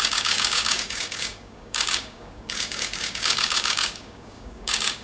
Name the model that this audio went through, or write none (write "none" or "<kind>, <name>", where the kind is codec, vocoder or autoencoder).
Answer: codec, DAC